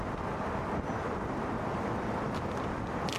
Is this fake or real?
real